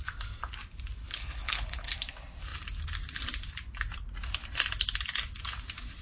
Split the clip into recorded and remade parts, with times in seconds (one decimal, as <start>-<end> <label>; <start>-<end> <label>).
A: 0.0-1.0 recorded; 1.0-1.9 remade; 1.9-6.0 recorded